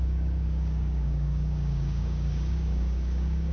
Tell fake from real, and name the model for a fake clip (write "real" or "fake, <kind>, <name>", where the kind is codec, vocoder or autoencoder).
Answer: fake, codec, DAC